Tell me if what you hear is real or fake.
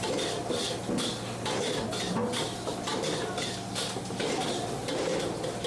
real